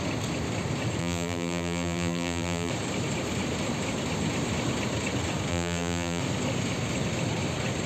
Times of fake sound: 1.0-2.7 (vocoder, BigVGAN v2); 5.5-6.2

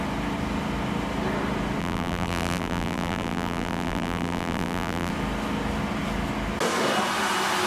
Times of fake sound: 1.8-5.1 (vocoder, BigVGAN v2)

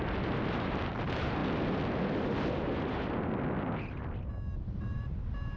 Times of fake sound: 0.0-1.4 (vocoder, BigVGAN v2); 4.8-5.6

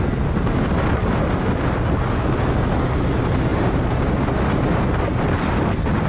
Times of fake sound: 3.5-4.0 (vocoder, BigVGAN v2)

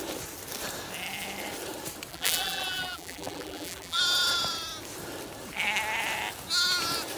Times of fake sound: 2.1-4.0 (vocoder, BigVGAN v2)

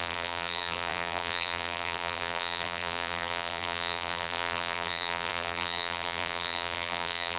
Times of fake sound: 0.0-7.4 (vocoder, BigVGAN v2)

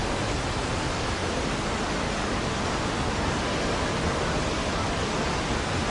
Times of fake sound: 1.2-1.8 (vocoder, BigVGAN v2)

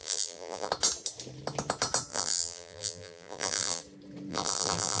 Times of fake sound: 0.0-0.7 (vocoder, BigVGAN v2); 2.1-3.8; 4.3-5.0